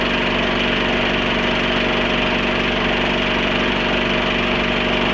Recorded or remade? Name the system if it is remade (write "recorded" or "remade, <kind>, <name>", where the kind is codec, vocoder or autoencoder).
recorded